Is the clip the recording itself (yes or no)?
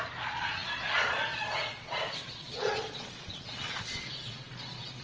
no